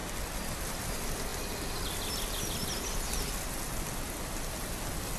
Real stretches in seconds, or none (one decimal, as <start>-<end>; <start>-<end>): 0.0-5.2